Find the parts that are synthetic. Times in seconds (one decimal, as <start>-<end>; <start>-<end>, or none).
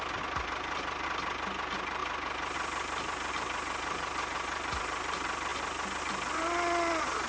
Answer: none